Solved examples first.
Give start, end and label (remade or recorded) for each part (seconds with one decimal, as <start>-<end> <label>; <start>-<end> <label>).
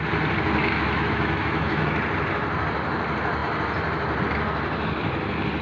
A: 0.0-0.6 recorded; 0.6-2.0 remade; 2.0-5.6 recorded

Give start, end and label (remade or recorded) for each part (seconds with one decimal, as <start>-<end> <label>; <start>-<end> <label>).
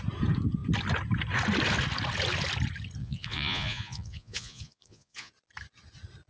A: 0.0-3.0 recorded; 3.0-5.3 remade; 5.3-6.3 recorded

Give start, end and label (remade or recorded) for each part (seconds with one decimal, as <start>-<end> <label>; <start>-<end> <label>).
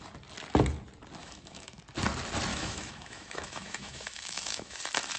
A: 0.0-1.2 recorded; 1.2-1.8 remade; 1.8-2.5 recorded; 2.5-4.8 remade; 4.8-5.2 recorded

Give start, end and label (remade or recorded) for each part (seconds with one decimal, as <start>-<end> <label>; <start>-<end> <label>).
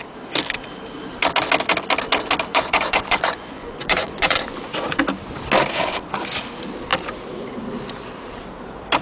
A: 0.0-2.5 recorded; 2.5-5.0 remade; 5.0-9.0 recorded